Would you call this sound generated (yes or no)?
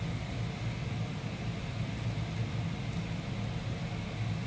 no